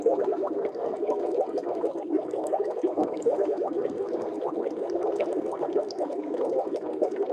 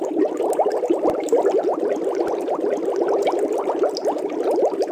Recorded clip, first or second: second